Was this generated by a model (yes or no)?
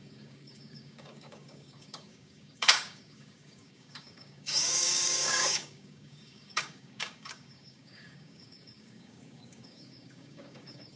yes